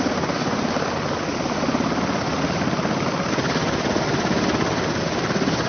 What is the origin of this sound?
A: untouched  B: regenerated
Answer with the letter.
A